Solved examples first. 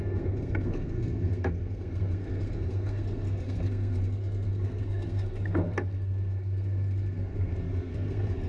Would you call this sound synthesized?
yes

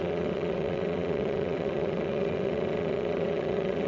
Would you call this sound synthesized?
yes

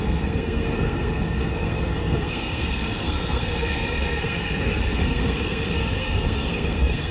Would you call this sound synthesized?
yes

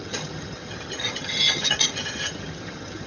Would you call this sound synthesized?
yes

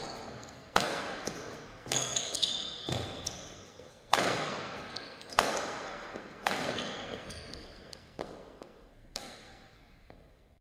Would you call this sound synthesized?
yes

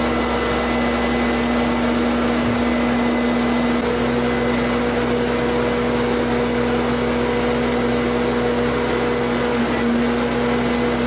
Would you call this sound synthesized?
no